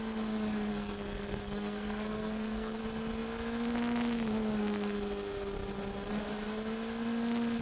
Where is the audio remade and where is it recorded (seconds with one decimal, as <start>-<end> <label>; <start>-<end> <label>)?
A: 0.0-0.7 recorded; 0.7-2.8 remade; 2.8-7.6 recorded